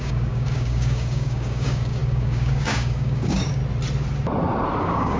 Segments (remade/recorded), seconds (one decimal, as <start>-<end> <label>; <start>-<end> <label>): 0.0-3.6 remade; 3.6-4.8 recorded; 4.8-5.2 remade